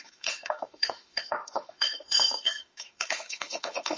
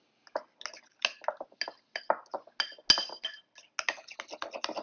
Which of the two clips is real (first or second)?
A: second